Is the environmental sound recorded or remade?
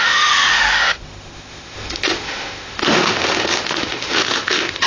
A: remade